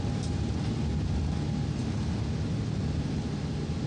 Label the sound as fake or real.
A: real